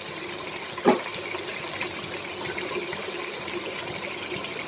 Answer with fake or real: real